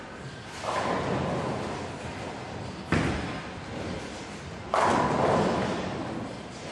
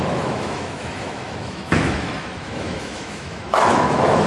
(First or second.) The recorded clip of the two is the first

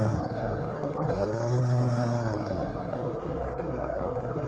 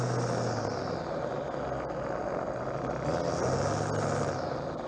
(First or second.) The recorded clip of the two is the second